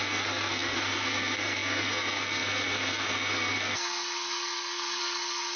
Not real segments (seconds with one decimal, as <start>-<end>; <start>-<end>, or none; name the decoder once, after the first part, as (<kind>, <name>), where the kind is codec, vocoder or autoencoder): 0.0-5.6 (codec, SNAC)